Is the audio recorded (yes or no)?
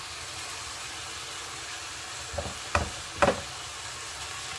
yes